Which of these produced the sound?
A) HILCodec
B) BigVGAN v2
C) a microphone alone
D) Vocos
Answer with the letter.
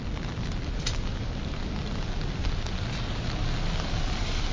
C